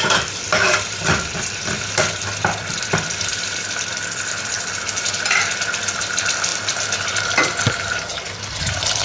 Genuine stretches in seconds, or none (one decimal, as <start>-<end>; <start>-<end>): 3.9-5.8; 6.5-7.1